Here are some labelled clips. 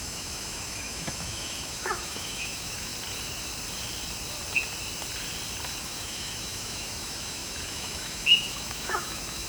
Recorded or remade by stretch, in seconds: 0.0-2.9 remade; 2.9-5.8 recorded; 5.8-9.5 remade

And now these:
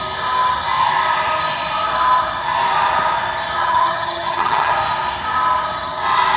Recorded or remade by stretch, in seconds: 0.0-3.6 recorded; 3.6-4.7 remade; 4.7-6.4 recorded

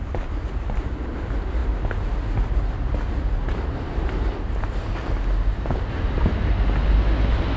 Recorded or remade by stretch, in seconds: 0.0-7.6 recorded

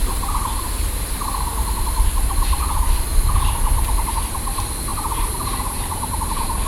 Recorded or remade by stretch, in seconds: 0.0-4.9 recorded; 4.9-6.2 remade; 6.2-6.7 recorded

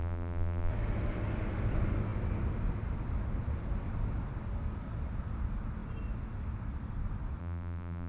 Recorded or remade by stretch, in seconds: 0.0-0.7 remade; 0.7-7.4 recorded; 7.4-8.1 remade

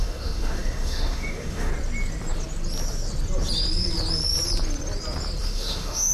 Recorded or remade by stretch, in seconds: 0.0-1.7 remade; 1.7-5.4 recorded; 5.4-6.1 remade